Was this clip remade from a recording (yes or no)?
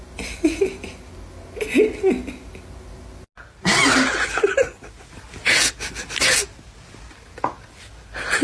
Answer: no